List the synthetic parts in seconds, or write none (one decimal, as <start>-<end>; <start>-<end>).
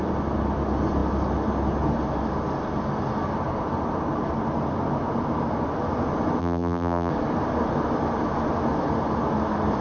6.4-7.1